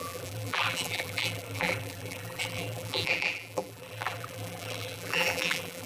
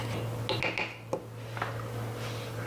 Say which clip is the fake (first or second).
first